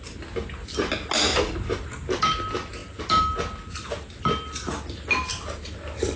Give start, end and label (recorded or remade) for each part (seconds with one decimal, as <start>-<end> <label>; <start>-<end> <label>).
0.0-1.3 recorded; 1.3-2.1 remade; 2.1-6.2 recorded